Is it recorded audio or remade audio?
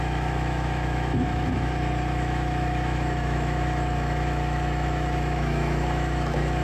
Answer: remade